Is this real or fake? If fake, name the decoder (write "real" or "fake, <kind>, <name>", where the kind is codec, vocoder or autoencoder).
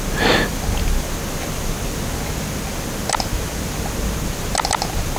real